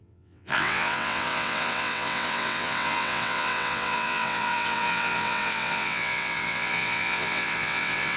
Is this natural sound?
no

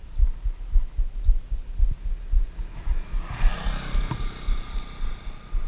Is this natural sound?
yes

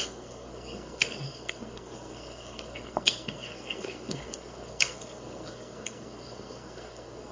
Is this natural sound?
no